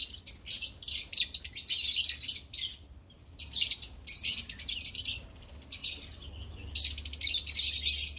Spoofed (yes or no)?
no